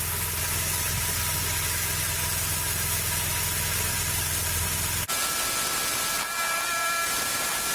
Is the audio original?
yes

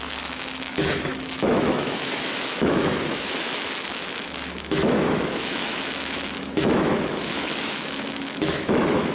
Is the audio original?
no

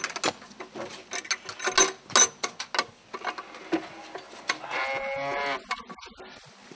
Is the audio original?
yes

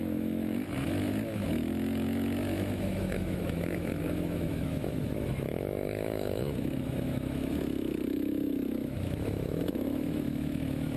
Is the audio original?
no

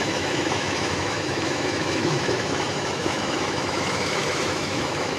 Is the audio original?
no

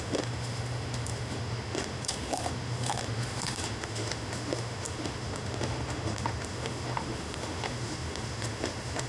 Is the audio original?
no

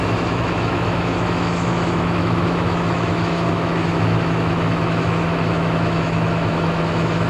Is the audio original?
no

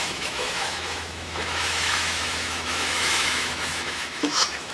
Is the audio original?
no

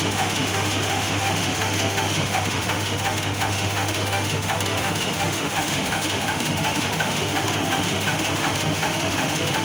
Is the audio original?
no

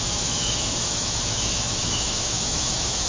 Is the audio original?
no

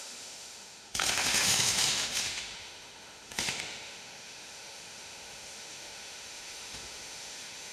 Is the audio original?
no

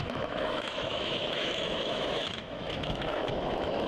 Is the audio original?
no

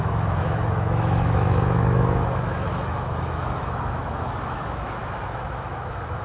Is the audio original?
no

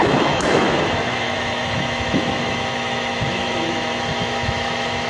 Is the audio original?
no